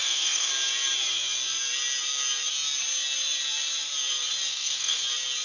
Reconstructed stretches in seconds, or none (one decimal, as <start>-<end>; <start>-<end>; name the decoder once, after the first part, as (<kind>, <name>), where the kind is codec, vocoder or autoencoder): 0.0-0.5 (codec, SNAC); 4.5-5.0